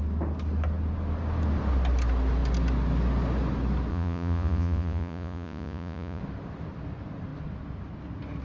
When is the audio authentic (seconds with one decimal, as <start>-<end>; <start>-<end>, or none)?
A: 0.0-3.9; 6.2-8.4